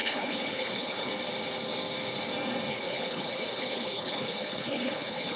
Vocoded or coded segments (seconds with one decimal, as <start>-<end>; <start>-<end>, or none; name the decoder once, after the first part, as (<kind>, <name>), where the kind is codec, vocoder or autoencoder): 0.0-1.1 (codec, HILCodec); 2.7-5.4